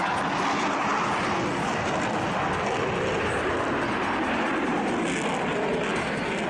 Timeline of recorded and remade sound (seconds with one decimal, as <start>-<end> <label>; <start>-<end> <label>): 0.0-6.5 recorded